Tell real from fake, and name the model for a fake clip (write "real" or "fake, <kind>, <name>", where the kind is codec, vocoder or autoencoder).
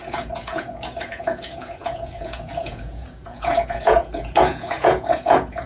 fake, vocoder, Vocos